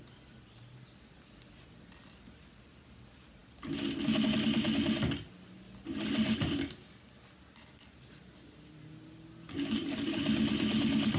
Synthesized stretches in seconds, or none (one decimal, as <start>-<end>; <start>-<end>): none